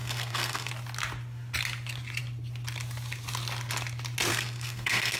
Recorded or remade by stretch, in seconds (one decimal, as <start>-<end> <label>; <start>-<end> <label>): 0.0-0.7 remade; 0.7-4.3 recorded; 4.3-5.2 remade